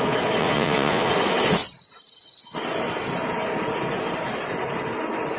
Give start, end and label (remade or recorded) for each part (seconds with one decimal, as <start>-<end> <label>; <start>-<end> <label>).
0.0-0.4 recorded; 0.4-1.1 remade; 1.1-5.4 recorded